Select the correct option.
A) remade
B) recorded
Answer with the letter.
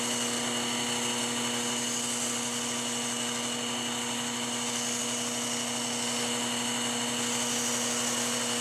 B